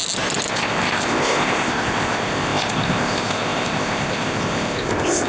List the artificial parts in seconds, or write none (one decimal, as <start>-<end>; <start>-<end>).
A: 0.5-5.3